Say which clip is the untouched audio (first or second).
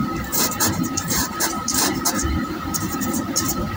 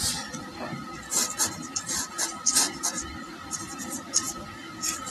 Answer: second